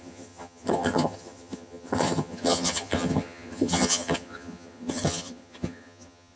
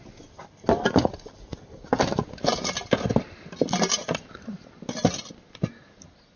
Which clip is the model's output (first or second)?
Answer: first